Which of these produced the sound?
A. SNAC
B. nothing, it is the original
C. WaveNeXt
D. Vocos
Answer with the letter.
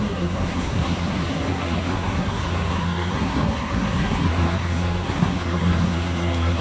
A